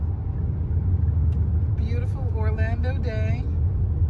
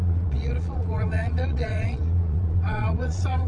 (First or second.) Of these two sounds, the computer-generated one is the second